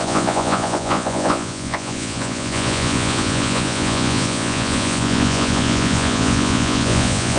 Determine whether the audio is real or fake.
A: fake